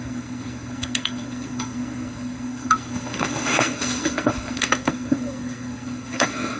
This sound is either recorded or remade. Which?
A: remade